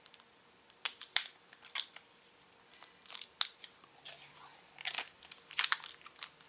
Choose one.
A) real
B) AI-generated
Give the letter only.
A